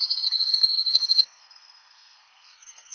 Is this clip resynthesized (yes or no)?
yes